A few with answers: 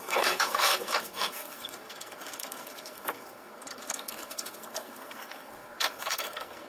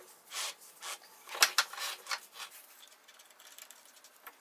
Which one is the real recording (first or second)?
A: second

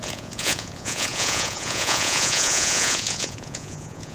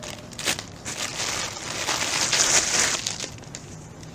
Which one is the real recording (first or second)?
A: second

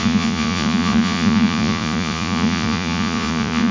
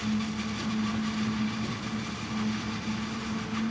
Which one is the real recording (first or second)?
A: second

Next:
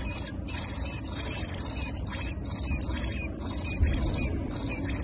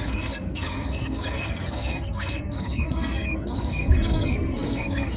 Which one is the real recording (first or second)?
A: first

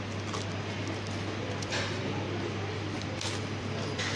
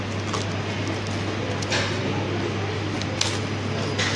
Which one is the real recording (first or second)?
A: second